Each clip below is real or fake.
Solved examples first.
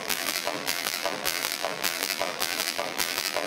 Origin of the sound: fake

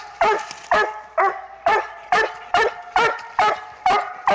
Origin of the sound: real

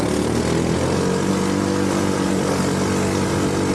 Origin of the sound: real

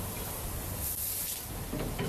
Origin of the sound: real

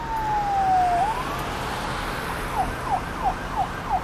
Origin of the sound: real